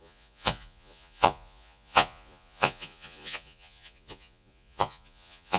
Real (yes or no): no